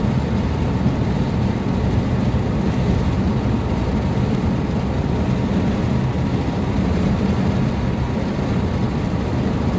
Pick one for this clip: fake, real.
real